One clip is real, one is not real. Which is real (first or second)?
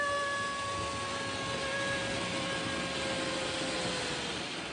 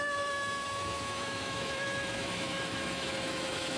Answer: first